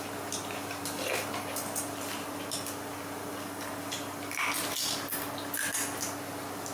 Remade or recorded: recorded